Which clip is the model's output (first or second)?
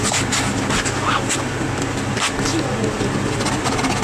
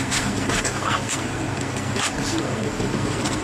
second